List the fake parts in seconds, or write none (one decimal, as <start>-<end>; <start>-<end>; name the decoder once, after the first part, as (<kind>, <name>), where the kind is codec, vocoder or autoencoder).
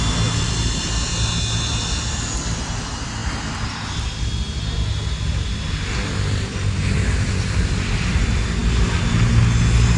none